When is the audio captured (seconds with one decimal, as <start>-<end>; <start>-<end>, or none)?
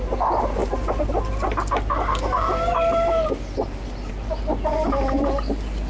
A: 0.0-5.9